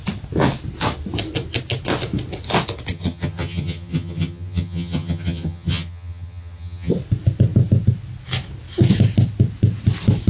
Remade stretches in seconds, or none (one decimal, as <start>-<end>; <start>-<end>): 2.9-6.9